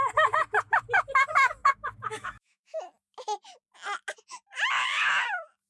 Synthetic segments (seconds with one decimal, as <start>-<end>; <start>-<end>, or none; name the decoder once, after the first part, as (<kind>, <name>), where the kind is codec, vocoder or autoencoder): 1.6-2.9 (autoencoder, DAC-VAE)